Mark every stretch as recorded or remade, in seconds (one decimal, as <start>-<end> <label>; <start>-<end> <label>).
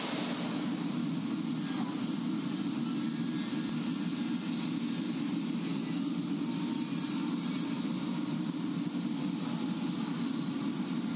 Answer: 0.0-11.2 recorded